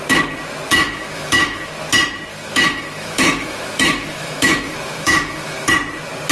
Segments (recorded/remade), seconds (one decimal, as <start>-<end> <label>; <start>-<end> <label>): 0.0-0.7 recorded; 0.7-1.7 remade; 1.7-2.3 recorded; 2.3-5.7 remade; 5.7-6.3 recorded